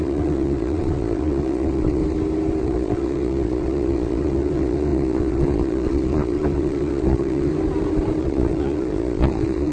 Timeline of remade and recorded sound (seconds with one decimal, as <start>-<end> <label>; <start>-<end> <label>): 0.0-2.0 remade; 2.0-2.6 recorded; 2.6-7.5 remade; 7.5-8.2 recorded; 8.2-9.7 remade